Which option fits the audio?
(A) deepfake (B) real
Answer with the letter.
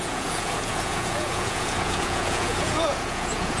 A